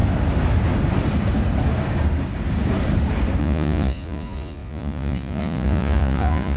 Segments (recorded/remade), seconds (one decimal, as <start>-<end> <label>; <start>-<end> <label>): 0.0-3.4 recorded; 3.4-6.6 remade